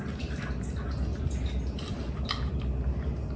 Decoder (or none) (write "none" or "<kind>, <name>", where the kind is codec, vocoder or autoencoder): none